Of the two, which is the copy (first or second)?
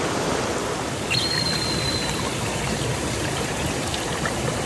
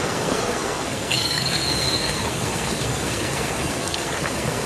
second